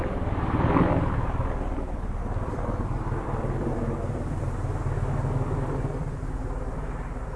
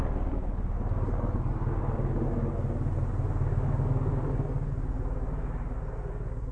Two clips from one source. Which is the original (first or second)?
second